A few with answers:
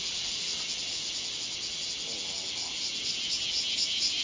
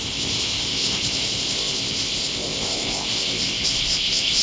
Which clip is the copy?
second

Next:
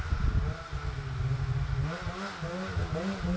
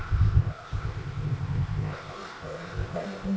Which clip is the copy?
second